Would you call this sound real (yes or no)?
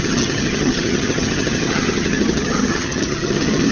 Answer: no